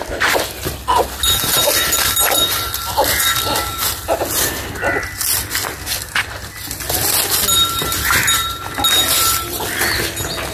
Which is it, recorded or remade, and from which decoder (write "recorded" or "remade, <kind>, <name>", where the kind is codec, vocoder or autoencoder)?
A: recorded